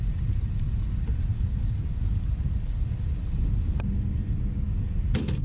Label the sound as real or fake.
real